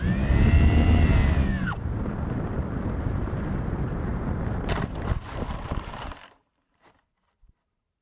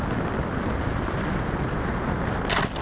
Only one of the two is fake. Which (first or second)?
first